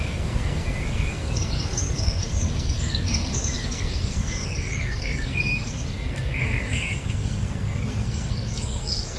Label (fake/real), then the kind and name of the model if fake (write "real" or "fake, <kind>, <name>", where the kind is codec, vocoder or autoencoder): fake, codec, SNAC